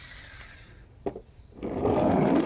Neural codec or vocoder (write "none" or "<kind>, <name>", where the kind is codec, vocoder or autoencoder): none